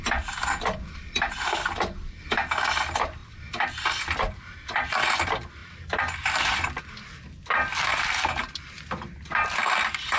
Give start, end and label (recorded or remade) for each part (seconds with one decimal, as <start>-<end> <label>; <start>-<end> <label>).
0.0-7.9 recorded; 7.9-8.7 remade; 8.7-10.2 recorded